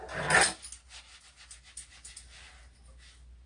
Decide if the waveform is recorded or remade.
recorded